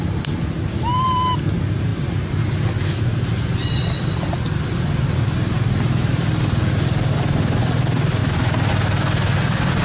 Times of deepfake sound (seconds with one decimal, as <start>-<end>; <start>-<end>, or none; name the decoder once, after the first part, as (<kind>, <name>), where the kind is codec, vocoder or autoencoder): none